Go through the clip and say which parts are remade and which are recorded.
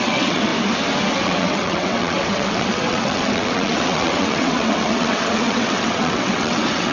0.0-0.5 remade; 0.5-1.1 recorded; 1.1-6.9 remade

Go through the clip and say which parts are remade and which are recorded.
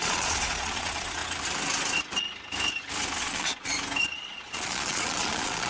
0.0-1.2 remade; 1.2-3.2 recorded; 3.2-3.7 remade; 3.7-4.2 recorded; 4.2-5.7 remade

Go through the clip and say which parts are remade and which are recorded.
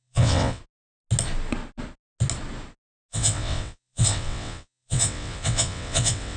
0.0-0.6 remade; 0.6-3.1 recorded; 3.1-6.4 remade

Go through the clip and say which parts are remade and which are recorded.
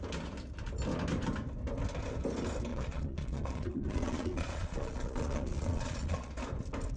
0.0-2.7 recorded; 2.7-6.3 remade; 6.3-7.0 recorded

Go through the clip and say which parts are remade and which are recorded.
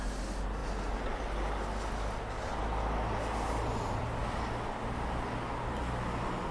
0.0-6.5 recorded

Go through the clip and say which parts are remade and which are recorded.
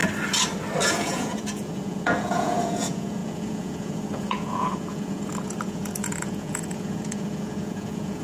0.0-0.8 recorded; 0.8-8.2 remade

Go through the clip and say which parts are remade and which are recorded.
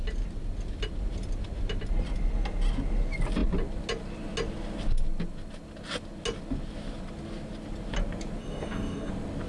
0.0-8.4 recorded; 8.4-9.1 remade; 9.1-9.5 recorded